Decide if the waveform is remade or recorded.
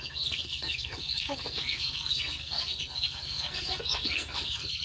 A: remade